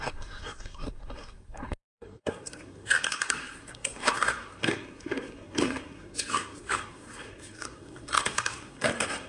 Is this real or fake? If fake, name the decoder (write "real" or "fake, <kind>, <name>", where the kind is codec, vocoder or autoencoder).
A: fake, codec, SNAC